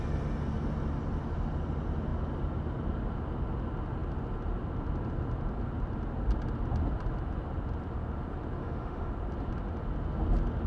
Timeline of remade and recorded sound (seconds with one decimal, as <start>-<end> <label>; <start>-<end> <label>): 0.0-8.6 recorded; 8.6-9.1 remade; 9.1-10.7 recorded